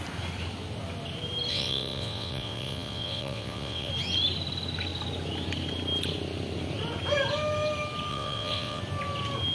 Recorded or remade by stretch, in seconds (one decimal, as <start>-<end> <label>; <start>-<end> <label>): 0.0-1.5 recorded; 1.5-3.9 remade; 3.9-8.1 recorded; 8.1-8.8 remade; 8.8-9.5 recorded